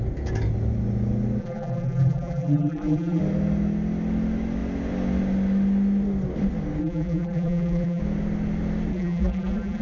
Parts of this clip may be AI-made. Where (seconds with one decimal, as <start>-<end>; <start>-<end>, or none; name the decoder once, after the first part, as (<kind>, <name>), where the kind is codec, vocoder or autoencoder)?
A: 1.4-3.2 (vocoder, BigVGAN v2); 6.8-8.0; 8.9-9.8